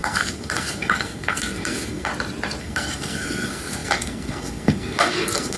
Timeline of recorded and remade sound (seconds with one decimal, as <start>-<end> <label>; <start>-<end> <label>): 0.0-2.1 remade; 2.1-2.6 recorded; 2.6-5.6 remade